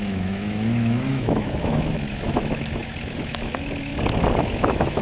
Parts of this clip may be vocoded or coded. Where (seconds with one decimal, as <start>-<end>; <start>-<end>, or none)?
0.0-3.9; 4.4-5.0